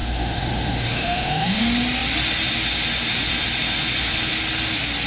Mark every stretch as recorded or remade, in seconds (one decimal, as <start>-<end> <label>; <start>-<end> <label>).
0.0-1.6 remade; 1.6-5.1 recorded